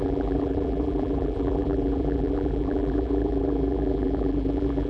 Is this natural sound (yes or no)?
no